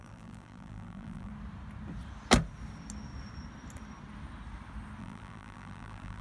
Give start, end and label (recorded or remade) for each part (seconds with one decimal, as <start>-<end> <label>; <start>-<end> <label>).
0.0-1.3 remade; 1.3-5.0 recorded; 5.0-6.2 remade